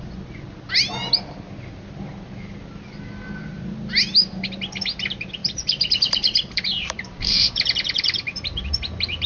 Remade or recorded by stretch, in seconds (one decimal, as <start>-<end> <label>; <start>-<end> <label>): 0.0-5.4 recorded; 5.4-8.7 remade; 8.7-9.3 recorded